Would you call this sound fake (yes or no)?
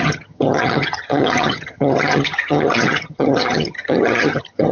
yes